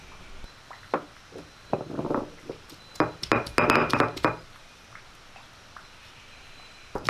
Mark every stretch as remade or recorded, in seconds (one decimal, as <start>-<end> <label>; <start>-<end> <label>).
0.0-7.1 recorded